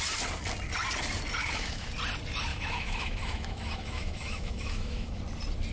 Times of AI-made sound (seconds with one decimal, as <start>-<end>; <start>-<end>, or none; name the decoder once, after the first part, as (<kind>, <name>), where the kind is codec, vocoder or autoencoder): 1.4-1.9 (autoencoder, DAC-VAE); 2.5-5.2